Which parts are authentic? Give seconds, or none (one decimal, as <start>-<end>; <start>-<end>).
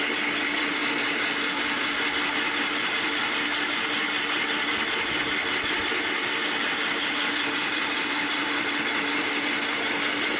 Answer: 0.0-10.4